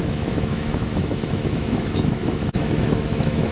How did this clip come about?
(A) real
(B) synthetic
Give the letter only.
B